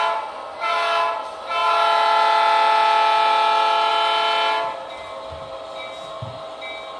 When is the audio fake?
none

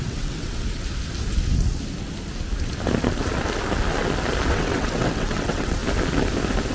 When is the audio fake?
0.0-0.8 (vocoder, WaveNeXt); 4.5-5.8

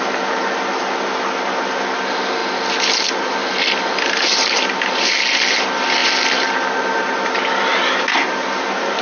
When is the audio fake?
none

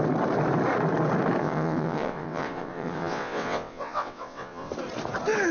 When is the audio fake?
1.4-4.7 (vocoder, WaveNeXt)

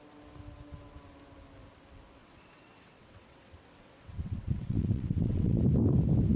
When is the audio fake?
2.2-5.6 (vocoder, WaveNeXt)

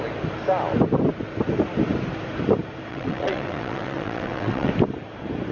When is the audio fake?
2.9-4.7 (vocoder, WaveNeXt)

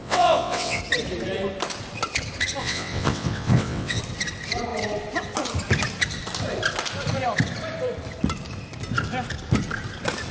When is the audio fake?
0.0-0.8 (vocoder, WaveNeXt); 2.6-4.0

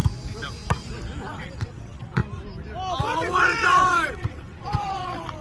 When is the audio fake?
1.3-2.2 (vocoder, WaveNeXt); 3.0-5.4